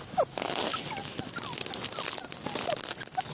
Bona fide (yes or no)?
yes